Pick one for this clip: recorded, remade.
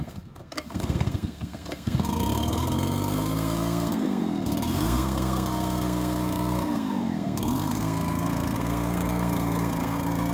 remade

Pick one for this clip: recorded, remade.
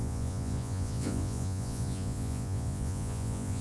remade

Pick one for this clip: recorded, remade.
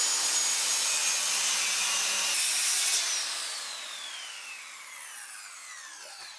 recorded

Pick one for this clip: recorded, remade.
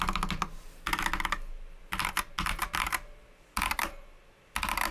recorded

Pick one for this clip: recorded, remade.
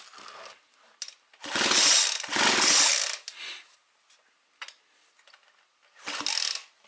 recorded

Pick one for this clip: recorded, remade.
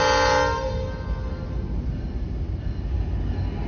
recorded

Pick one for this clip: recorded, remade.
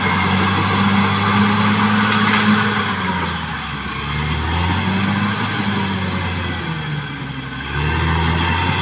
recorded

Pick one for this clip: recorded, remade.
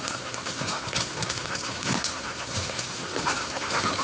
remade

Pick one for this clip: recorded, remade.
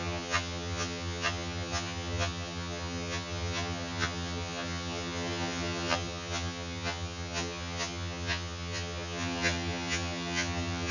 remade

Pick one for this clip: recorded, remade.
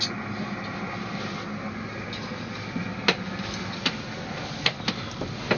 recorded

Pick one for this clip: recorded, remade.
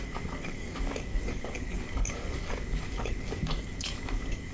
remade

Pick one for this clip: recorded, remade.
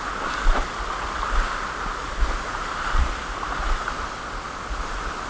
recorded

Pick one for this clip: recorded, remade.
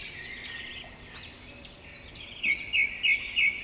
recorded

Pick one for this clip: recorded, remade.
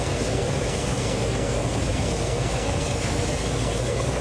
remade